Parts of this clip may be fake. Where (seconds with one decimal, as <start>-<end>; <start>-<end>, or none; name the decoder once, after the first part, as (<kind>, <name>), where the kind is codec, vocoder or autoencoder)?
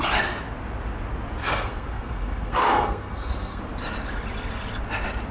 1.4-3.6 (codec, SNAC)